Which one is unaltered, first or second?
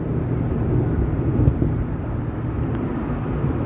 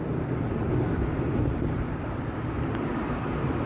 first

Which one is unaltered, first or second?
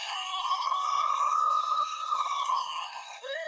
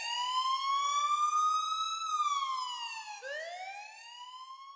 second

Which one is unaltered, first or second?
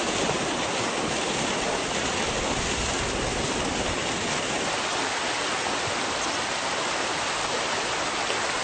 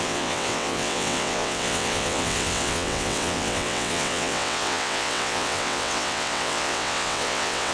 first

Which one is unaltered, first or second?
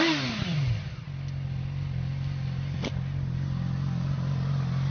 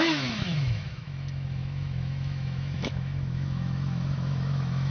first